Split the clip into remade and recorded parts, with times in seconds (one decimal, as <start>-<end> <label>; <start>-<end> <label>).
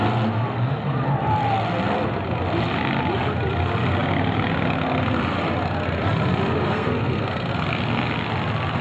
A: 0.0-6.6 recorded; 6.6-7.5 remade; 7.5-8.8 recorded